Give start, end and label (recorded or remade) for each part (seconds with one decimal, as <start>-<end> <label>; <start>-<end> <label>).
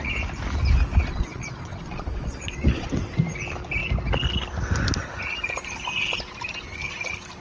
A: 0.0-1.1 recorded; 1.1-2.9 remade; 2.9-7.4 recorded